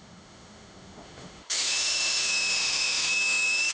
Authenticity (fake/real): fake